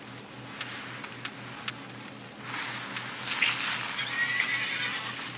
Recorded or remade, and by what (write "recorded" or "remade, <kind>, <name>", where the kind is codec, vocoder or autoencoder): recorded